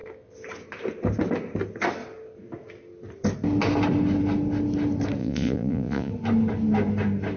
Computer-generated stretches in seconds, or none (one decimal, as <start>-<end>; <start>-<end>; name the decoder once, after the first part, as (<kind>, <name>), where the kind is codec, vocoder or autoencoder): 5.2-6.1 (vocoder, Vocos)